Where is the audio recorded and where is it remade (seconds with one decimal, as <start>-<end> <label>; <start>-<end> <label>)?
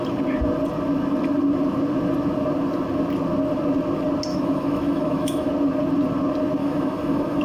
0.0-4.3 recorded; 4.3-5.5 remade; 5.5-6.6 recorded; 6.6-7.4 remade